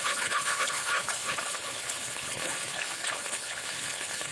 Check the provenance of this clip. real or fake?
fake